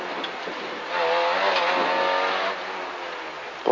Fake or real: real